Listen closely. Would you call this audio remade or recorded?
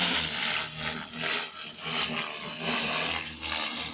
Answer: recorded